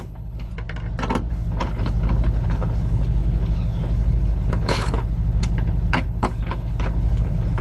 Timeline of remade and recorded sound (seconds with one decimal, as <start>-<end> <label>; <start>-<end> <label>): 0.0-0.5 remade; 0.5-1.3 recorded; 1.3-7.6 remade